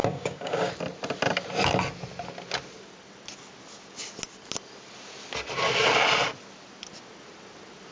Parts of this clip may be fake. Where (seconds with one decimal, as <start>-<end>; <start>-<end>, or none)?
0.0-0.7